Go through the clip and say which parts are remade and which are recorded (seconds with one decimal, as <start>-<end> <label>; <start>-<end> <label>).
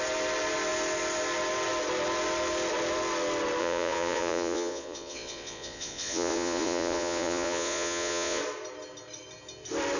0.0-3.6 recorded; 3.6-8.4 remade; 8.4-10.0 recorded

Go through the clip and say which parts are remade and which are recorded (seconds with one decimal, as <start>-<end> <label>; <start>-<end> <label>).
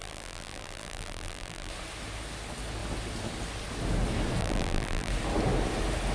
0.0-1.7 remade; 1.7-4.4 recorded; 4.4-5.1 remade; 5.1-6.1 recorded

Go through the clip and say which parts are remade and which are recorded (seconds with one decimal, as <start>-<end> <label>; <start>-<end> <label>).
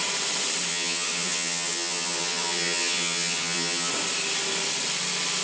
0.0-0.7 recorded; 0.7-3.9 remade; 3.9-5.4 recorded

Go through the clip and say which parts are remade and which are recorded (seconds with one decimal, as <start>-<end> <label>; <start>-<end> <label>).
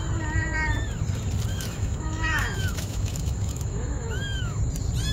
0.0-1.5 recorded; 1.5-4.6 remade; 4.6-5.1 recorded